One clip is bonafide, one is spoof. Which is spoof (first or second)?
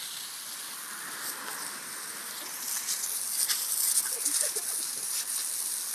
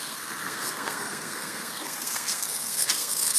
second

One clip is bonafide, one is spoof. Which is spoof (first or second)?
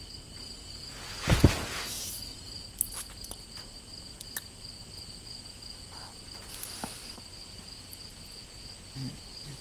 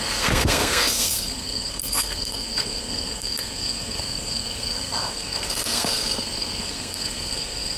second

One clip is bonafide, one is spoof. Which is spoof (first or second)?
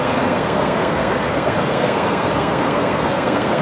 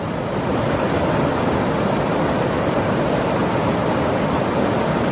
first